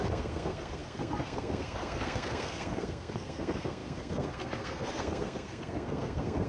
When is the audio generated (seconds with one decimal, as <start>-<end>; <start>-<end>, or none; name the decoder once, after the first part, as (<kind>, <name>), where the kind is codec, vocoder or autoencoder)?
0.0-6.5 (codec, SNAC)

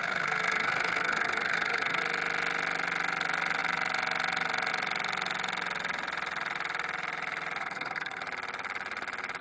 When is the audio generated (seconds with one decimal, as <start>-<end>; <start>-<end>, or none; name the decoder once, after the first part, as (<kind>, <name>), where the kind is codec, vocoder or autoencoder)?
0.0-2.0 (codec, SNAC); 7.6-8.2